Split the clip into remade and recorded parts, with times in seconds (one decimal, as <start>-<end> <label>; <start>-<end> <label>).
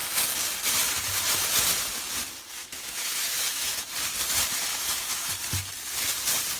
0.0-2.6 recorded; 2.6-3.9 remade; 3.9-4.7 recorded; 4.7-5.3 remade; 5.3-6.6 recorded